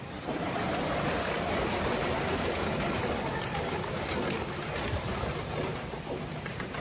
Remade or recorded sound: recorded